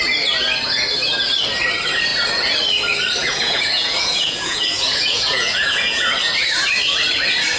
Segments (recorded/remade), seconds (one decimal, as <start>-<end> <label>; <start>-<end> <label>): 0.0-3.2 recorded; 3.2-6.1 remade; 6.1-7.6 recorded